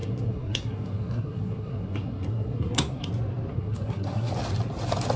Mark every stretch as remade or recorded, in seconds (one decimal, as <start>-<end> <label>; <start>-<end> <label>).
0.0-3.1 remade; 3.1-3.5 recorded; 3.5-4.3 remade; 4.3-5.2 recorded